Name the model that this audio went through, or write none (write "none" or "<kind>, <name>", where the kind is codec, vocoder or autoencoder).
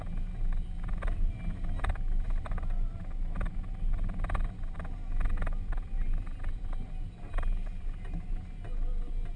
none